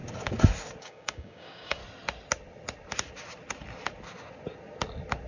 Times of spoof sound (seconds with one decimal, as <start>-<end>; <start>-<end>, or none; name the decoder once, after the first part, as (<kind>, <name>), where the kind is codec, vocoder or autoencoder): 0.8-1.8 (codec, DAC)